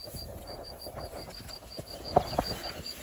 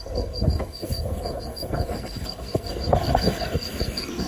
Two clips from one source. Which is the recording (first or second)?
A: first